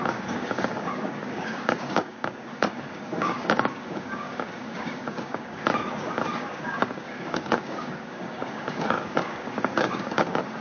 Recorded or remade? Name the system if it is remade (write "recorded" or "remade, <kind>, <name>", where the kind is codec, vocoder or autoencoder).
remade, codec, DAC